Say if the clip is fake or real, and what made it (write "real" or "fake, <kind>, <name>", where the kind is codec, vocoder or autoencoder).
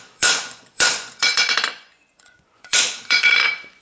fake, vocoder, Vocos